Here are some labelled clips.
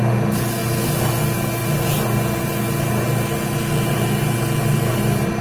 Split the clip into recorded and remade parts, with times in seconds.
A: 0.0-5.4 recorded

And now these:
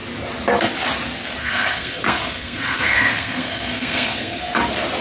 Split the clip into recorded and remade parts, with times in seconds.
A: 0.0-1.4 recorded; 1.4-4.4 remade; 4.4-5.0 recorded

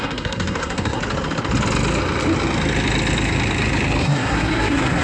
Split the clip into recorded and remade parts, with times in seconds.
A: 0.0-1.0 remade; 1.0-4.0 recorded; 4.0-5.0 remade

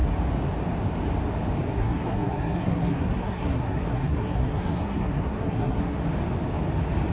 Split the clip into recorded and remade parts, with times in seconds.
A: 0.0-1.7 recorded; 1.7-6.0 remade; 6.0-7.1 recorded

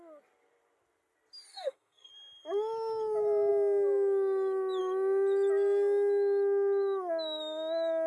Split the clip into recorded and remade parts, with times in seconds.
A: 0.0-1.5 recorded; 1.5-2.1 remade; 2.1-8.1 recorded

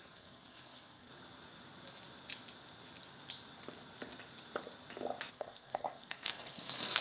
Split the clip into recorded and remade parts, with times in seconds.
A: 0.0-1.1 remade; 1.1-5.3 recorded; 5.3-7.0 remade

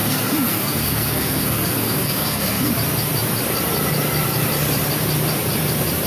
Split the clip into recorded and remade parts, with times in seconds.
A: 0.0-2.7 remade; 2.7-6.1 recorded